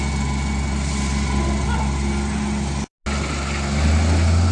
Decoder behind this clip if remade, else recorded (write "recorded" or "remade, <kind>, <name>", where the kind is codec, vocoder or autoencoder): recorded